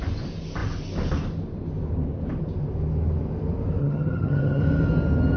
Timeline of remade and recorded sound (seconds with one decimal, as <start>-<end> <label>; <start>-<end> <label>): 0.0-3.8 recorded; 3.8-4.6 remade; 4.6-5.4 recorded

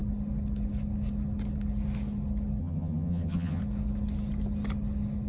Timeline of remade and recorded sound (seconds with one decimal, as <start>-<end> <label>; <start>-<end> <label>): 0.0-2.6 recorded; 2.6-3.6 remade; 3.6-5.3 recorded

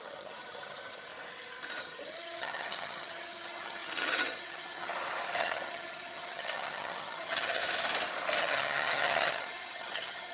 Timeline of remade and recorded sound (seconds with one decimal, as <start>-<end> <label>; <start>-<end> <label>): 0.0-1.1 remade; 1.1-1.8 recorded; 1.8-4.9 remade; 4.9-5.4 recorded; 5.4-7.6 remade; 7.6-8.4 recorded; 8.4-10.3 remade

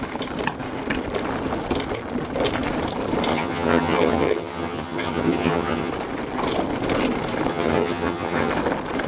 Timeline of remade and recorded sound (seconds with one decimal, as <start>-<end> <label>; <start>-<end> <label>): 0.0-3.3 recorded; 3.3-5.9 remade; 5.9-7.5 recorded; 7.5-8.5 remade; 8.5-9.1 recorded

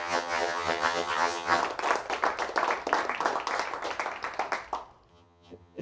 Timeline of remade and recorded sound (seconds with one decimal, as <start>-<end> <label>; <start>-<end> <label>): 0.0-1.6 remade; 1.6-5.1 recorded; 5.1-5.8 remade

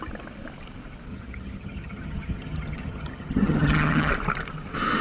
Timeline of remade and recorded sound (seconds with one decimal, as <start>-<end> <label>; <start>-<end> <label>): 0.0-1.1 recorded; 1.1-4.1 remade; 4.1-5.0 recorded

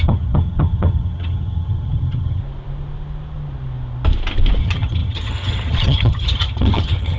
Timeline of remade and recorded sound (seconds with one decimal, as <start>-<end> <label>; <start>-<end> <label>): 0.0-2.4 remade; 2.4-4.6 recorded; 4.6-7.2 remade

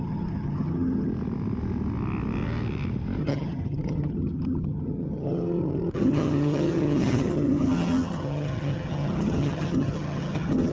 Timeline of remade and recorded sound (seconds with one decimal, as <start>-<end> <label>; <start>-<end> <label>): 0.0-1.1 remade; 1.1-3.2 recorded; 3.2-10.7 remade